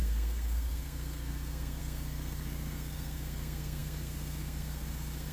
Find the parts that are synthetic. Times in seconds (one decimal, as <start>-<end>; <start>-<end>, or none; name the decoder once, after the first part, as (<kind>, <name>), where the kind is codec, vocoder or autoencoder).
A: 0.0-5.3 (codec, SNAC)